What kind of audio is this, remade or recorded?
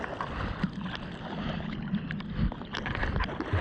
remade